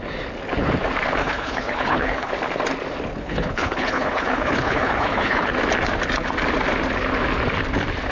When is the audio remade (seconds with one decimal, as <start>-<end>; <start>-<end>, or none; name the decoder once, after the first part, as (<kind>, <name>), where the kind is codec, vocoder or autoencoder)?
1.2-2.3 (codec, HILCodec); 3.2-5.5